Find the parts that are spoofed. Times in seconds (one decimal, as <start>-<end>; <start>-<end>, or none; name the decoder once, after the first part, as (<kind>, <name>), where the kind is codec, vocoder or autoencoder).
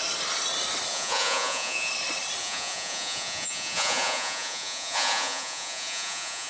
0.9-1.9 (vocoder, Vocos); 2.4-6.5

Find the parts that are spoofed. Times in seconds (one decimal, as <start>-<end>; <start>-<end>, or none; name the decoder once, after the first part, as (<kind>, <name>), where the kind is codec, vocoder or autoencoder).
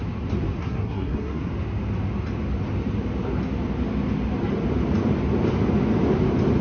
0.6-1.5 (codec, SNAC)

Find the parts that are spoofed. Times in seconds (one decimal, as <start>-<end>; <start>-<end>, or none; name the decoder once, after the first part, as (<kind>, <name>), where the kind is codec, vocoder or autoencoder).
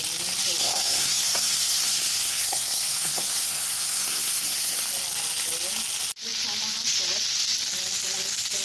0.6-4.8 (codec, SNAC)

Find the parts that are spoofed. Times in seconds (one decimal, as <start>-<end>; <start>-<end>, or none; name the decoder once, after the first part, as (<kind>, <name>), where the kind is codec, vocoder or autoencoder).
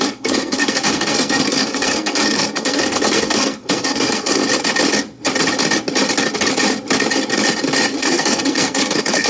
0.0-4.4 (codec, SNAC); 8.0-9.3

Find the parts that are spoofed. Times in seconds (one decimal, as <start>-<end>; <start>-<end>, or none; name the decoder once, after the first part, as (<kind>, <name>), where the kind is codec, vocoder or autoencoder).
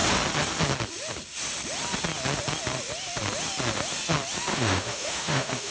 4.5-5.7 (autoencoder, DAC-VAE)